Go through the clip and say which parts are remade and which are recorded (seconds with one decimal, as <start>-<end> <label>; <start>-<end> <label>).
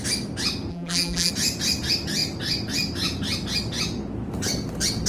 0.0-0.7 recorded; 0.7-1.3 remade; 1.3-5.1 recorded